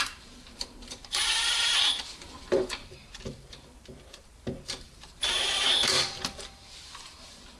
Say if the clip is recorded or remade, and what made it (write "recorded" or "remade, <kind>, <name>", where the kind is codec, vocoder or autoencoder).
remade, vocoder, BigVGAN v2